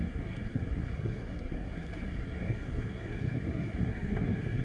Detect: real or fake fake